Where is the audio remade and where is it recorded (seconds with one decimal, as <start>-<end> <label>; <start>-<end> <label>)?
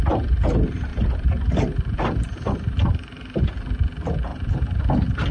0.0-0.9 recorded; 0.9-3.4 remade; 3.4-4.3 recorded; 4.3-4.8 remade; 4.8-5.3 recorded